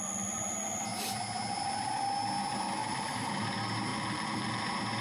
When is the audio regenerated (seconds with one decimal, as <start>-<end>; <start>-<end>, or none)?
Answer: 2.8-3.3; 3.9-4.6